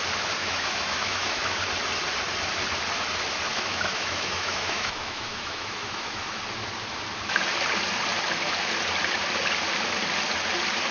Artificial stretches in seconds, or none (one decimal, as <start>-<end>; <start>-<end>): 0.4-1.6; 3.5-6.4